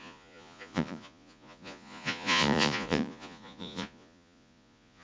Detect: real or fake fake